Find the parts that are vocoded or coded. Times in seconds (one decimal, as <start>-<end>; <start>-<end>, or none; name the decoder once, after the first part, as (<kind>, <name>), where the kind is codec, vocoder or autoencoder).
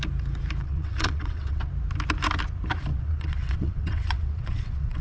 0.6-1.7 (vocoder, WaveNeXt); 2.9-5.0